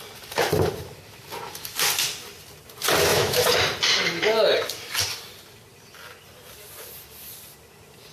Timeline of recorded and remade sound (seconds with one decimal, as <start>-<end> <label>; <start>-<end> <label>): 0.0-3.1 recorded; 3.1-3.6 remade; 3.6-8.1 recorded